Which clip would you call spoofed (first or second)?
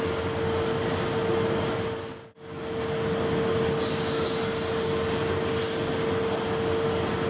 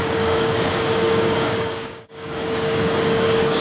second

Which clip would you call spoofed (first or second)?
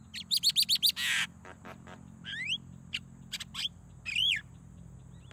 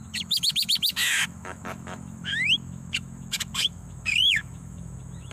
second